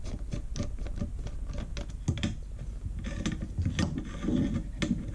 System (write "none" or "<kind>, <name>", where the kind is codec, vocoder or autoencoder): none